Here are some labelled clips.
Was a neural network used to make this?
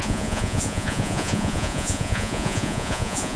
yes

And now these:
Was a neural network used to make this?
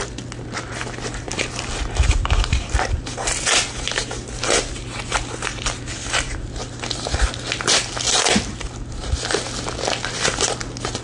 no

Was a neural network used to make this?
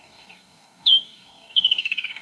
yes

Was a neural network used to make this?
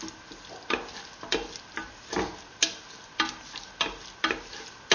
no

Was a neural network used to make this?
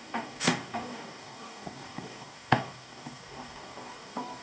yes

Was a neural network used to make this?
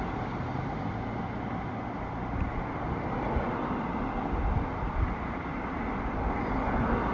no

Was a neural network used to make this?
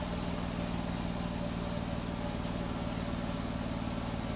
no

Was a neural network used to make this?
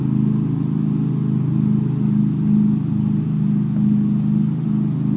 no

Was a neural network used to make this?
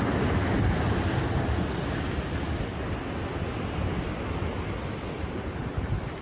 no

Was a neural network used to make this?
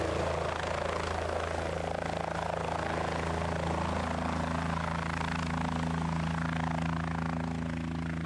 no